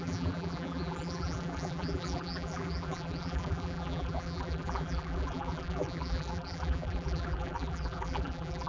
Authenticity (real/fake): fake